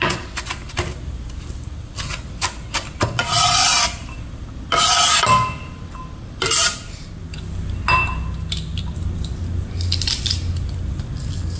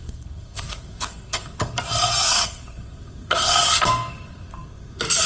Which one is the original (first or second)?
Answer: first